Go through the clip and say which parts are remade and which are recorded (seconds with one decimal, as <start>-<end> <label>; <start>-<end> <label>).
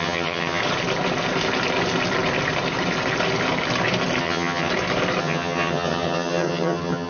0.0-0.6 remade; 0.6-4.2 recorded; 4.2-4.7 remade; 4.7-5.2 recorded; 5.2-7.1 remade